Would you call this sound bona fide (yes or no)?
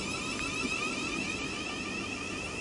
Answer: yes